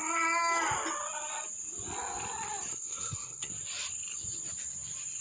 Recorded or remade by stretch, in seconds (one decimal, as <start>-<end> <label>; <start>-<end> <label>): 0.0-2.7 recorded; 2.7-3.5 remade; 3.5-5.2 recorded